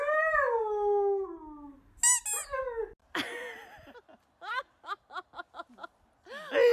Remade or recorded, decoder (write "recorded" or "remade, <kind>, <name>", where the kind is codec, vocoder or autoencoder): recorded